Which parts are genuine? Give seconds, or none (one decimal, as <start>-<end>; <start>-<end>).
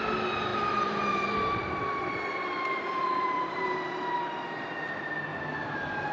0.0-0.5; 4.2-5.3